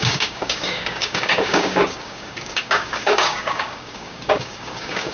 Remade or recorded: remade